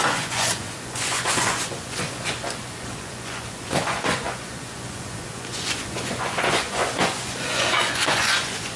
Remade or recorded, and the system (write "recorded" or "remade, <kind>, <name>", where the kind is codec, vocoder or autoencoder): remade, vocoder, Vocos